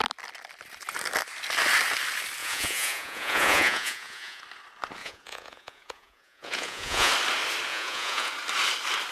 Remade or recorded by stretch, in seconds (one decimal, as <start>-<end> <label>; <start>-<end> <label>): 0.0-2.4 recorded; 2.4-4.4 remade; 4.4-5.0 recorded; 5.0-7.1 remade; 7.1-7.7 recorded; 7.7-8.3 remade; 8.3-9.1 recorded